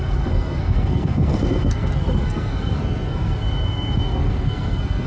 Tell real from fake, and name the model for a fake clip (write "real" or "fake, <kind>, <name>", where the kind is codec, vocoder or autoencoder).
fake, codec, SNAC